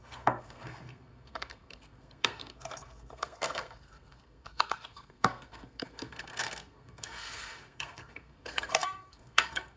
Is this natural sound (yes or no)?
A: no